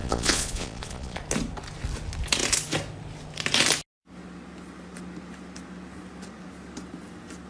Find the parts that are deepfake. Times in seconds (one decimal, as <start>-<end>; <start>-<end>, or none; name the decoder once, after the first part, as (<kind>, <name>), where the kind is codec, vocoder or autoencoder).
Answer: 0.0-1.2 (vocoder, Vocos)